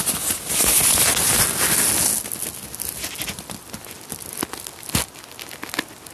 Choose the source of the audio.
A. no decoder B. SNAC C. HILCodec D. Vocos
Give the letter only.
A